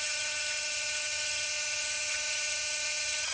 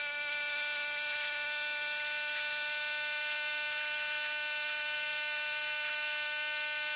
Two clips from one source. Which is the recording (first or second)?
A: second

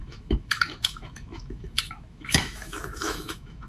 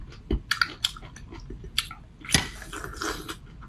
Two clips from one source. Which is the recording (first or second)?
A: second